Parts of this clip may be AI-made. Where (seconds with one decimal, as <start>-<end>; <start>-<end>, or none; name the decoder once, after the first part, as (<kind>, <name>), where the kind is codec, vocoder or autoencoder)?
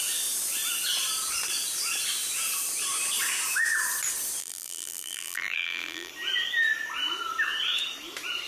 4.4-6.1 (vocoder, BigVGAN v2)